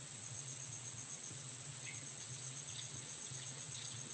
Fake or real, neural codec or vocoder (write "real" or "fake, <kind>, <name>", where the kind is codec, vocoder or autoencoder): fake, vocoder, WaveNeXt